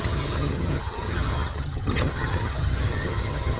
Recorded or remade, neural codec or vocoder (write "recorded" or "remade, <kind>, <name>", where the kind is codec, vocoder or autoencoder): remade, vocoder, HiFi-GAN